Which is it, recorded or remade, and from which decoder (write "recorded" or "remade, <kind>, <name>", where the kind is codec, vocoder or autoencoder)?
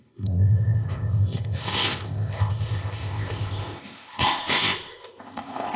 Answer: remade, codec, ZipCodec